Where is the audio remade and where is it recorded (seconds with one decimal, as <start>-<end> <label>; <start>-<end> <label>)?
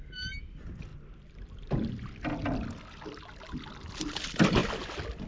0.0-5.3 recorded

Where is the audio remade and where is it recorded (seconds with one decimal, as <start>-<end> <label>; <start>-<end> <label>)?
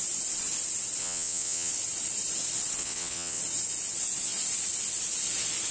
0.0-1.0 recorded; 1.0-1.7 remade; 1.7-2.8 recorded; 2.8-3.4 remade; 3.4-5.7 recorded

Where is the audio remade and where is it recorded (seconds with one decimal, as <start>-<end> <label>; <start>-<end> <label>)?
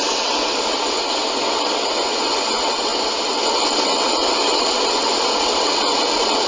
0.0-6.5 remade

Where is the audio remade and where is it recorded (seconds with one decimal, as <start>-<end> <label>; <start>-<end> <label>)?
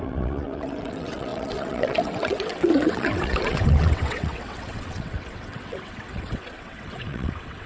0.0-7.7 remade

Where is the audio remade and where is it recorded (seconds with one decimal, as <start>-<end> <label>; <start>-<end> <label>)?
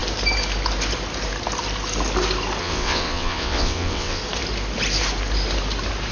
0.0-2.6 recorded; 2.6-4.2 remade; 4.2-6.1 recorded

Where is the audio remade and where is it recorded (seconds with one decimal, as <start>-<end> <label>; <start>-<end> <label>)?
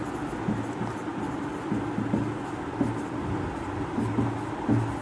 0.0-5.0 recorded